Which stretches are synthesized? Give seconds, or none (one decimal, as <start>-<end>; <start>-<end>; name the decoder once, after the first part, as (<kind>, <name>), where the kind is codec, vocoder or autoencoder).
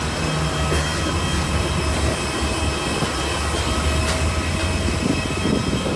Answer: none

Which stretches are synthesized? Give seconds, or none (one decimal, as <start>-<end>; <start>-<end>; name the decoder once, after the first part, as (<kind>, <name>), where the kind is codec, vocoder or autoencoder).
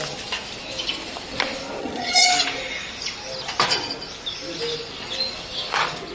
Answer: 1.8-2.3 (vocoder, HiFi-GAN)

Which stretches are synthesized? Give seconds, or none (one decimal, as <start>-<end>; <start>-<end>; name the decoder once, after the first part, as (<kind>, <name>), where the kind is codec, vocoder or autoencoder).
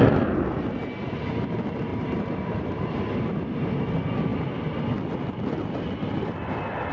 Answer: 1.9-2.9 (vocoder, BigVGAN v2)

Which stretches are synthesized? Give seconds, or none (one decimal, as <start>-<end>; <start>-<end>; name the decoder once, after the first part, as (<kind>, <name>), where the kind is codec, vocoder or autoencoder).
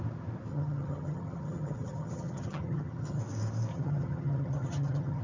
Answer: 0.5-3.2 (vocoder, HiFi-GAN); 3.7-5.2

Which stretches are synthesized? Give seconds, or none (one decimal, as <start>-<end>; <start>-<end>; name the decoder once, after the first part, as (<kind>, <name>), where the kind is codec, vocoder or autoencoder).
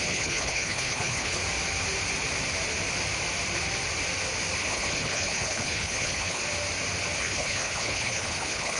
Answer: 0.0-1.4 (codec, HILCodec); 4.6-6.4; 7.2-8.8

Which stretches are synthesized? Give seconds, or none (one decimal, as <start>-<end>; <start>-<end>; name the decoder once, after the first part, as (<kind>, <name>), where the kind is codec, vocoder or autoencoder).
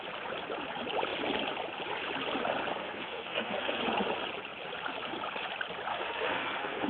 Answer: 2.7-3.8 (codec, SNAC); 5.9-6.9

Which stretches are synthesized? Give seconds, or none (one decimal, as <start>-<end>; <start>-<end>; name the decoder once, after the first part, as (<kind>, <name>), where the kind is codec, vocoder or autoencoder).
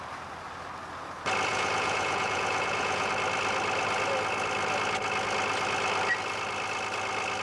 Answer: 1.5-3.1 (vocoder, Vocos)